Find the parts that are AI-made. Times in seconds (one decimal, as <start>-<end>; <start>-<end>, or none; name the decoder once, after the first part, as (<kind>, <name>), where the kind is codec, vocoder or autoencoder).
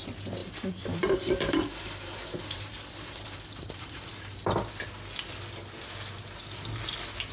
0.4-4.8 (vocoder, BigVGAN v2)